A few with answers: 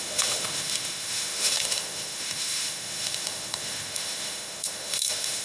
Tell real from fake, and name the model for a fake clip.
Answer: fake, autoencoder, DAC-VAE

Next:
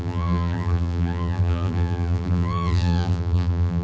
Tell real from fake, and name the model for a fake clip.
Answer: fake, vocoder, BigVGAN v2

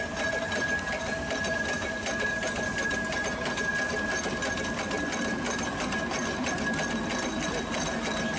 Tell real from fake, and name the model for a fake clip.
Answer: real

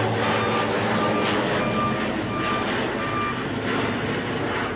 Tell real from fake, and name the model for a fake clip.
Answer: real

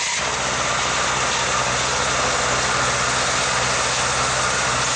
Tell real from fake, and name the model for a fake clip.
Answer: real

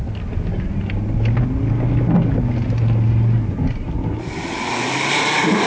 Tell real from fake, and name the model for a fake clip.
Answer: real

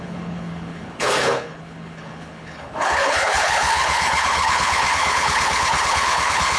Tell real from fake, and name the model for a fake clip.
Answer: fake, codec, HILCodec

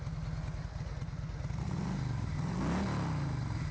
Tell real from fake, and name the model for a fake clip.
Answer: real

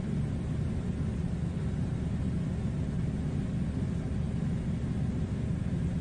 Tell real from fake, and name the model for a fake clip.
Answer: real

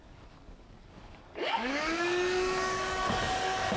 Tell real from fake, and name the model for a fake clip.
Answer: fake, codec, DAC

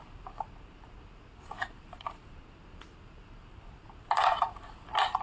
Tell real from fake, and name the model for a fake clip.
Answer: fake, vocoder, BigVGAN v2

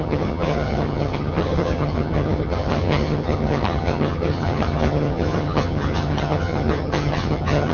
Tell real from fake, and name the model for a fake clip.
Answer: fake, vocoder, HiFi-GAN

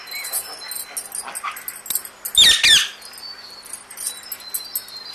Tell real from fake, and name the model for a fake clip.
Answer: real